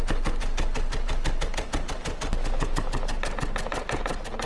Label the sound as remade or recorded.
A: recorded